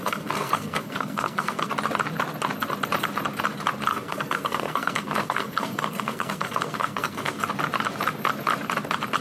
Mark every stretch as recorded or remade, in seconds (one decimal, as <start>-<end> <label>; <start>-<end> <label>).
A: 0.0-1.7 remade; 1.7-3.9 recorded; 3.9-7.4 remade; 7.4-9.2 recorded